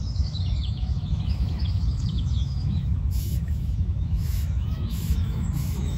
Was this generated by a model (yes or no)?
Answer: yes